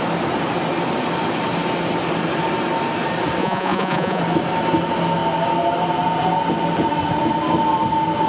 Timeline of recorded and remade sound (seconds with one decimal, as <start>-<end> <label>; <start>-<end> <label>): 0.0-3.4 recorded; 3.4-4.2 remade; 4.2-8.3 recorded